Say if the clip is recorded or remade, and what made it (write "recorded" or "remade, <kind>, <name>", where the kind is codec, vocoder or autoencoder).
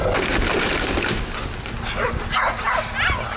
recorded